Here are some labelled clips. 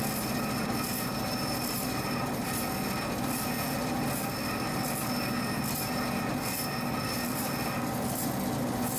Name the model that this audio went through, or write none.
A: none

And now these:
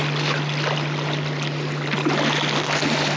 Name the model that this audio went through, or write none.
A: none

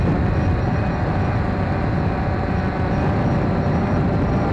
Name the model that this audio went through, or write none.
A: none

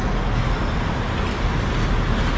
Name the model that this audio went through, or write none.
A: none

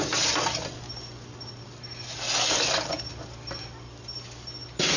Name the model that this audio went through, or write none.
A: none